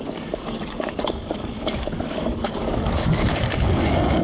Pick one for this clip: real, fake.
fake